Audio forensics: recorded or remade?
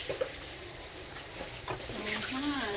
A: remade